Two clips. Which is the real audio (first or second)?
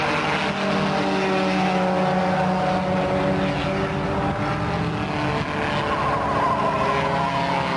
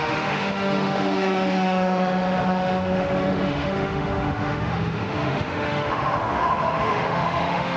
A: first